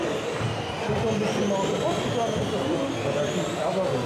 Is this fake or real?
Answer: real